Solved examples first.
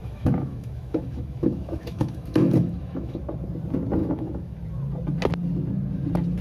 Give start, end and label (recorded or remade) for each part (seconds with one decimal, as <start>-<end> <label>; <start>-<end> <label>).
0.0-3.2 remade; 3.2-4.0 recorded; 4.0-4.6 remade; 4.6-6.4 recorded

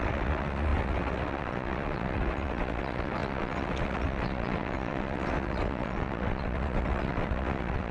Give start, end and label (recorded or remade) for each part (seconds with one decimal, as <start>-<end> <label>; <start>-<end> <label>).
0.0-7.9 remade

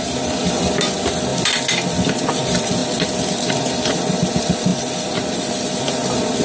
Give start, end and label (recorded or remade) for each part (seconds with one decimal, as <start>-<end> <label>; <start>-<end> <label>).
0.0-6.4 remade

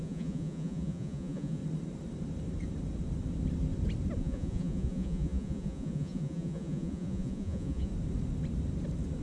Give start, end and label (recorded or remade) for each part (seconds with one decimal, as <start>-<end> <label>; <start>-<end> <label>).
0.0-1.6 remade; 1.6-4.2 recorded; 4.2-7.9 remade; 7.9-9.2 recorded